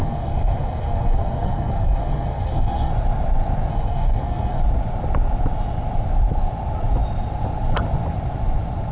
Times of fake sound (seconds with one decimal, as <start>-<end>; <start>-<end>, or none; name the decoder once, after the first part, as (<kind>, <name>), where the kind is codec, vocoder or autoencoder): 0.0-2.9 (codec, SNAC); 3.7-4.6